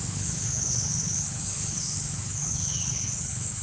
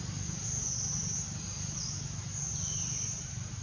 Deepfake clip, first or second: first